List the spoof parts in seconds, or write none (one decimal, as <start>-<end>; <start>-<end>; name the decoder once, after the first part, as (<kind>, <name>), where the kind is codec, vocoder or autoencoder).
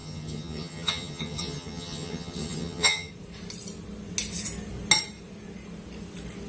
0.0-3.1 (vocoder, HiFi-GAN)